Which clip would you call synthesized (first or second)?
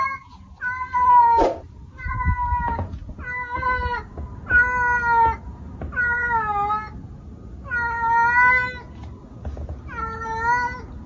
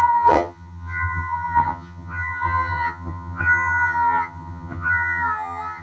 second